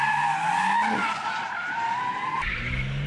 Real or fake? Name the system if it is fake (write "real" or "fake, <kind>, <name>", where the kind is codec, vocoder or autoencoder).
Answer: real